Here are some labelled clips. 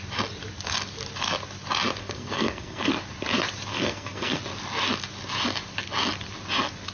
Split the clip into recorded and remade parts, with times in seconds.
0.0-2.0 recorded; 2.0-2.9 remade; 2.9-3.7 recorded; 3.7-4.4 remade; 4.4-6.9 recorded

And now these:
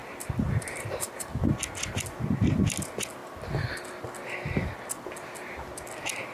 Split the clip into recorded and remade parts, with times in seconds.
0.0-1.4 remade; 1.4-6.3 recorded

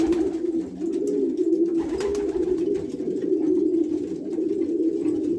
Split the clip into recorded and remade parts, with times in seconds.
0.0-5.4 recorded

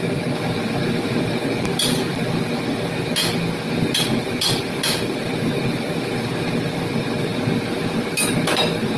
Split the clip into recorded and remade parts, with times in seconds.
0.0-9.0 recorded

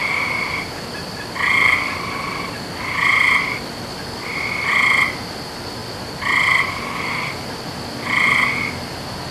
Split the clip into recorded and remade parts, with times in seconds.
0.0-0.7 remade; 0.7-5.8 recorded; 5.8-6.8 remade; 6.8-9.3 recorded

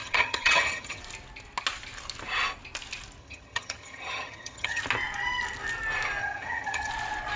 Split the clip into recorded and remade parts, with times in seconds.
0.0-1.0 remade; 1.0-3.2 recorded; 3.2-4.8 remade; 4.8-6.2 recorded; 6.2-6.9 remade; 6.9-7.4 recorded

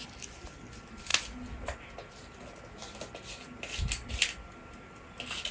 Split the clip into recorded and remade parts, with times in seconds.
0.0-5.5 recorded

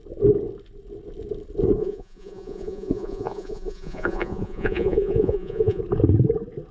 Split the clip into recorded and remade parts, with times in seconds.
0.0-1.8 recorded; 1.8-5.8 remade; 5.8-6.7 recorded